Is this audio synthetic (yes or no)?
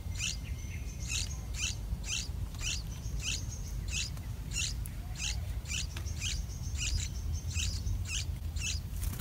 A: yes